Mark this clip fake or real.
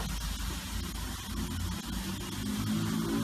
real